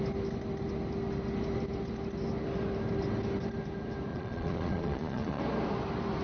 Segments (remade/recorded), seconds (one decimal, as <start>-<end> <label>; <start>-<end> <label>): 0.0-4.1 recorded; 4.1-5.4 remade; 5.4-6.2 recorded